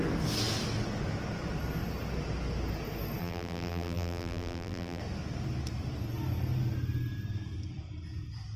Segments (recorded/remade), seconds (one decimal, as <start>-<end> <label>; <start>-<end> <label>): 0.0-3.2 recorded; 3.2-5.0 remade; 5.0-8.6 recorded